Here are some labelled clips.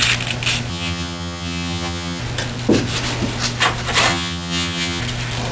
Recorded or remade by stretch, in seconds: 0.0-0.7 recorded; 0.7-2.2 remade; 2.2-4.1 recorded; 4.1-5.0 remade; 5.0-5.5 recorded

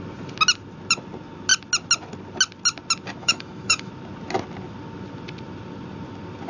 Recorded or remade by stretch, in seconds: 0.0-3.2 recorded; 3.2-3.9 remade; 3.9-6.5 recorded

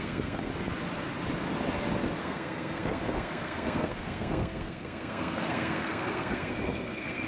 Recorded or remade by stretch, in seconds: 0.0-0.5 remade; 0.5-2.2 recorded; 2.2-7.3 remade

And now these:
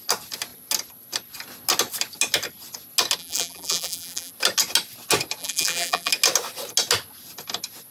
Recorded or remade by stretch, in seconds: 0.0-3.2 recorded; 3.2-4.3 remade; 4.3-5.4 recorded; 5.4-6.1 remade; 6.1-7.9 recorded

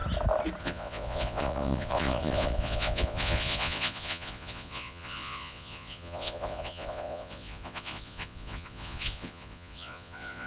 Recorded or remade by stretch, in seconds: 0.0-0.6 recorded; 0.6-10.5 remade

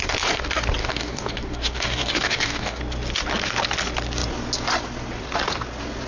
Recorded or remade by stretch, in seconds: 0.0-0.8 recorded; 0.8-2.8 remade; 2.8-6.1 recorded